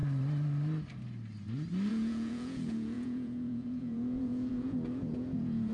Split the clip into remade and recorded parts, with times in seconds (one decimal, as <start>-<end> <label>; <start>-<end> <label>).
0.0-1.9 recorded; 1.9-5.7 remade